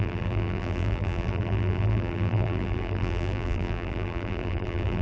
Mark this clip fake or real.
fake